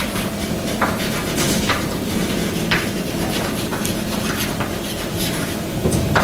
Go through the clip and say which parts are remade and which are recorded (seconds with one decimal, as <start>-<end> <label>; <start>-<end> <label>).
0.0-2.4 remade; 2.4-3.1 recorded; 3.1-3.7 remade; 3.7-5.2 recorded; 5.2-6.2 remade